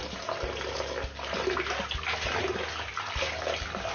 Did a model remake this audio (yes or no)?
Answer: no